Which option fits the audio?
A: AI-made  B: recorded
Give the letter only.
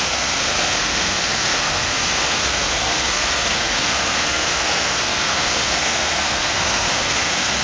A